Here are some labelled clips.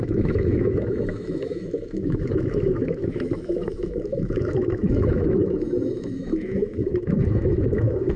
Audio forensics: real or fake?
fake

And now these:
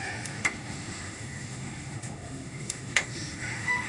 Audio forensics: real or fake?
fake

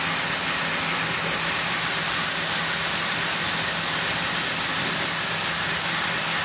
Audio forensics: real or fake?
real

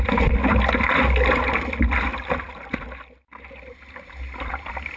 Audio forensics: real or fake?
real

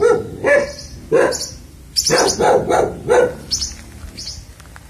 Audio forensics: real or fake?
real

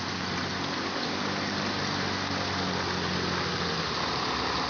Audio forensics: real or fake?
real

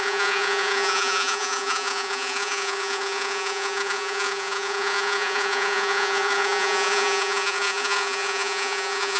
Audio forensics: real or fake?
fake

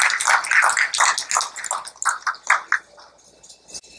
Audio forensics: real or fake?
real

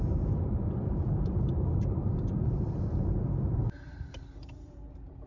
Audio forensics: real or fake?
fake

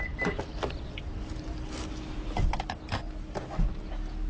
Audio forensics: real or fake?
real